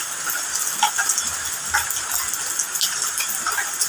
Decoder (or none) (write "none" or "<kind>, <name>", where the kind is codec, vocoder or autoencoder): none